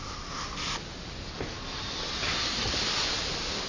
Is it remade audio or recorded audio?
recorded